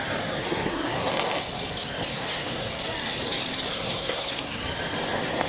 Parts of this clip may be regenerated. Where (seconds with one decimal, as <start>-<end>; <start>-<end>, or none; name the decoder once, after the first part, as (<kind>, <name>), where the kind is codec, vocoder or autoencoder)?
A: 0.4-1.1 (codec, SNAC); 2.1-2.7; 3.7-4.6